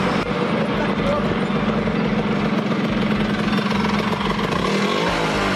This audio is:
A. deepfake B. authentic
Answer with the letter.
B